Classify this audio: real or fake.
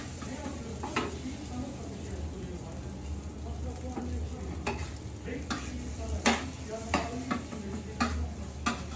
real